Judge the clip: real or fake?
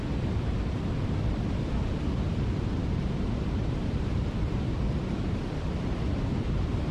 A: fake